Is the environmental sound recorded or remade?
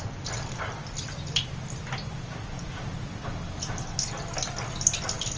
recorded